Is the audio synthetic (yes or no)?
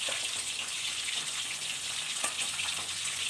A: yes